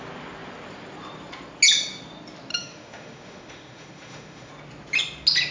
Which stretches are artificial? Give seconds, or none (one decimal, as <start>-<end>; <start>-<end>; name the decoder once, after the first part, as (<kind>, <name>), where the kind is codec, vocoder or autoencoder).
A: 2.5-4.5 (autoencoder, DAC-VAE)